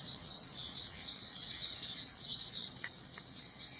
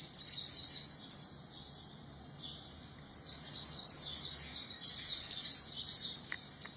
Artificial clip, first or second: first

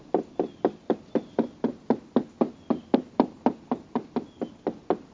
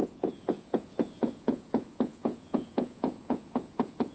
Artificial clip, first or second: second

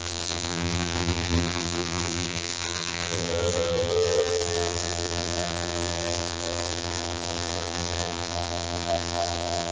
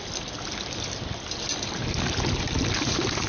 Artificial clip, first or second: first